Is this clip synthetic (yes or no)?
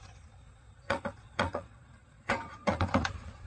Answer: yes